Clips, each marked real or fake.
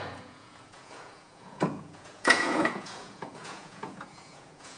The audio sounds fake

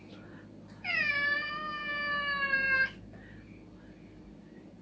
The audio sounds real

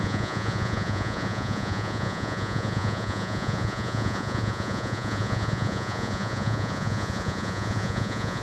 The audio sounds fake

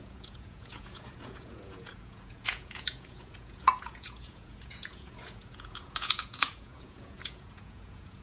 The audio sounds fake